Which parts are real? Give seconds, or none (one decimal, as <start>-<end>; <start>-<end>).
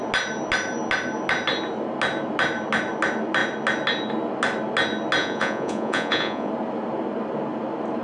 0.0-5.2; 6.5-8.0